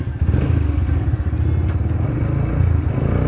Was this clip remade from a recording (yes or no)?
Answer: no